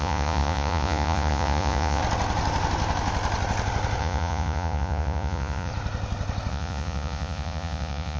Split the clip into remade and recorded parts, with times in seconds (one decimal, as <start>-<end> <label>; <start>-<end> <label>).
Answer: 0.0-2.0 remade; 2.0-4.0 recorded; 4.0-5.7 remade; 5.7-6.5 recorded; 6.5-8.2 remade